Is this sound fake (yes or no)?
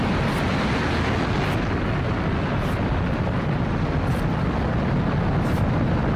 no